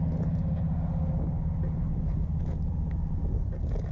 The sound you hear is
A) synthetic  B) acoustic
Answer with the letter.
B